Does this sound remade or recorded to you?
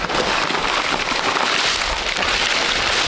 recorded